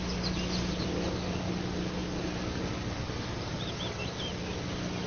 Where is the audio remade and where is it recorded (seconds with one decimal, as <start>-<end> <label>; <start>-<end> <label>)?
0.0-5.1 recorded